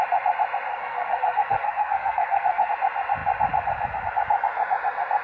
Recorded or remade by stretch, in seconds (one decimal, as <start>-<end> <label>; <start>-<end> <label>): 0.0-0.7 recorded; 0.7-2.7 remade; 2.7-5.2 recorded